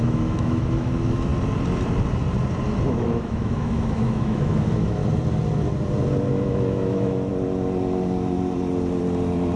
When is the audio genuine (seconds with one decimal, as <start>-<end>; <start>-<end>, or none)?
1.3-2.8; 5.0-6.3; 7.3-9.6